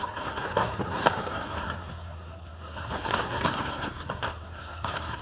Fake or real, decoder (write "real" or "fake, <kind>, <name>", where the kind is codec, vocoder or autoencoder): fake, codec, SNAC